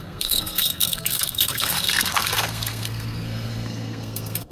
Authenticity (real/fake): fake